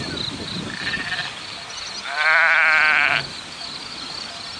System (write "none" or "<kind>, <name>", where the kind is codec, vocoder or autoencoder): none